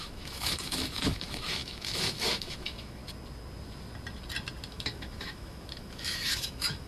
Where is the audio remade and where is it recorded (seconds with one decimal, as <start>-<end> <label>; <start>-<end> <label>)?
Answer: 0.0-3.0 remade; 3.0-4.7 recorded; 4.7-6.9 remade